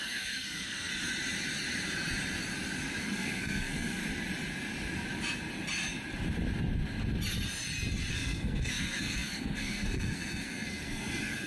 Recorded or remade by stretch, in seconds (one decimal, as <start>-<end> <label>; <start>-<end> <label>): 0.0-0.9 remade; 0.9-3.0 recorded; 3.0-4.0 remade; 4.0-8.1 recorded; 8.1-11.5 remade